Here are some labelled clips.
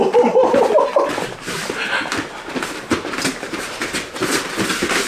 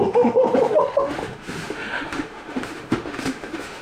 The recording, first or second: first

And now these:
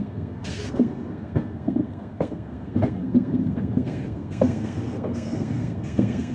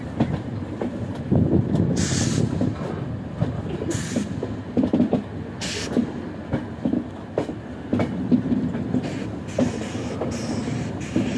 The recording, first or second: second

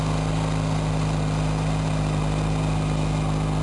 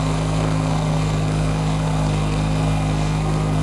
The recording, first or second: first